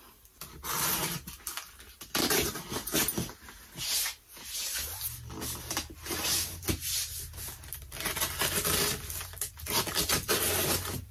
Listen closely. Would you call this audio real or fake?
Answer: real